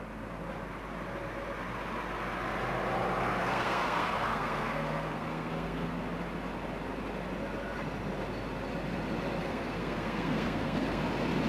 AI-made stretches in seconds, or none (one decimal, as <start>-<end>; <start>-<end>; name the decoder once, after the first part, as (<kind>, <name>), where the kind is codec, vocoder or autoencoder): 3.4-5.9 (codec, SNAC); 9.4-11.0